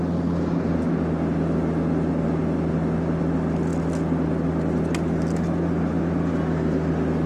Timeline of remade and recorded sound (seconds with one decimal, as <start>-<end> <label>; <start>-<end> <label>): 0.0-7.3 recorded